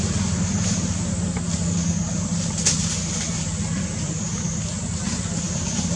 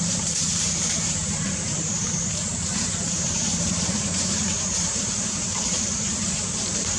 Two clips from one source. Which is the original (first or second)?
first